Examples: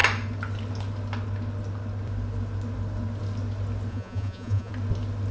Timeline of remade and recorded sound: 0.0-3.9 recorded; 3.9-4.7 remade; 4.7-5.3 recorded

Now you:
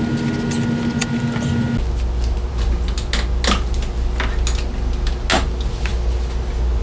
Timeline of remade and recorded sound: 0.0-6.8 recorded